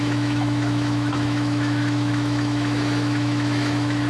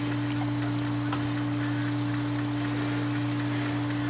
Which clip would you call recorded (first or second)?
second